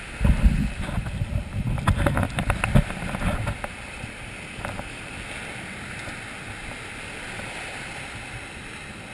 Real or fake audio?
real